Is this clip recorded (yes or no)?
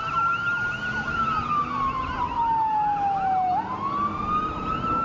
yes